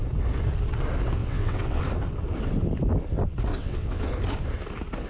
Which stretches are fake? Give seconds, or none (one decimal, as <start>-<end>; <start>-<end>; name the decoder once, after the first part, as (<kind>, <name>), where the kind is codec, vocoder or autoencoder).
1.2-1.8 (vocoder, WaveNeXt); 3.5-4.1